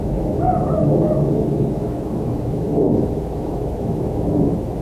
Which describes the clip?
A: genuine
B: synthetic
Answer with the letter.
B